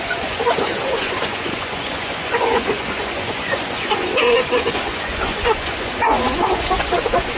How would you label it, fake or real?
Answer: fake